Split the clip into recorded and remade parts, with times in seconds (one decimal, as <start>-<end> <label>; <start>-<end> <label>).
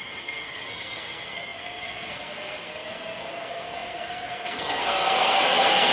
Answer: 0.0-5.9 remade